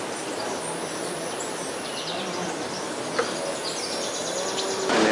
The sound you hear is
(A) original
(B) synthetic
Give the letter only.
A